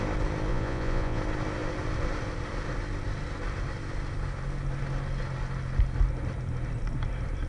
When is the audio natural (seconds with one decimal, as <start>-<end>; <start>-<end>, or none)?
0.0-0.5; 1.2-7.5